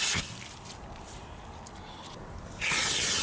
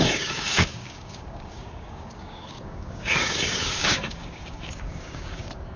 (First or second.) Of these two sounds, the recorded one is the first